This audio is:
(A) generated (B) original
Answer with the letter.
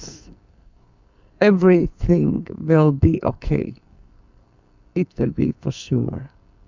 A